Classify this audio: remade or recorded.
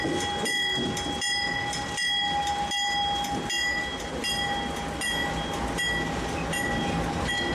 recorded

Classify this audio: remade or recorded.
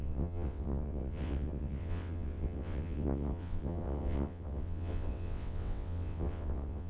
remade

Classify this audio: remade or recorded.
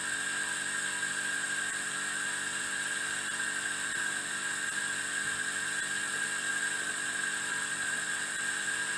remade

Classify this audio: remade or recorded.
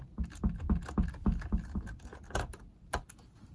recorded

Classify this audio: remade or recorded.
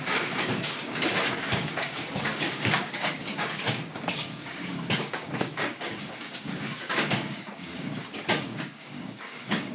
remade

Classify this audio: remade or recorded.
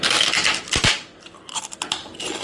recorded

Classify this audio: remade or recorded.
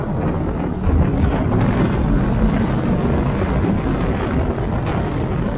recorded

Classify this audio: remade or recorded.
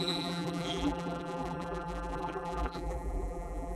remade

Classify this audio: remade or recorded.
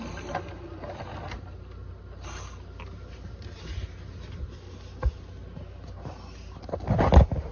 recorded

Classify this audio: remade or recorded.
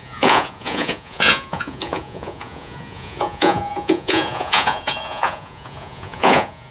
remade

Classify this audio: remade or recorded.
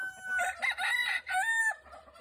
recorded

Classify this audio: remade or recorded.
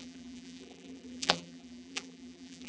remade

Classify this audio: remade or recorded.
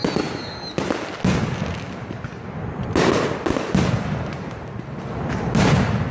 recorded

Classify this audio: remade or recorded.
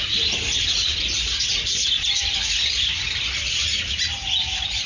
recorded